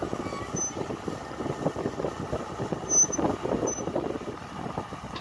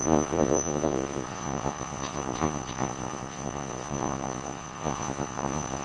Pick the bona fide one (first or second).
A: first